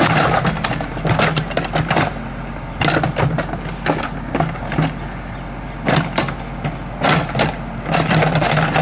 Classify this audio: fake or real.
real